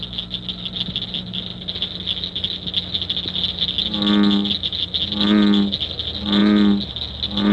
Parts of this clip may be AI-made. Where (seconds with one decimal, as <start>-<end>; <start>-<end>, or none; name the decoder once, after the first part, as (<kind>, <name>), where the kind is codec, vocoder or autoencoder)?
none